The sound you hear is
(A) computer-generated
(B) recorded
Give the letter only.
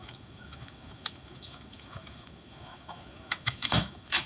A